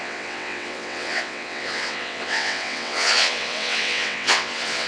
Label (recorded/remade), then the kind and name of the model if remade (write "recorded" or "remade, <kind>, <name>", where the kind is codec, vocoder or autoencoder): remade, vocoder, WaveNeXt